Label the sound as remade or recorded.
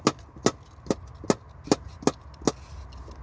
recorded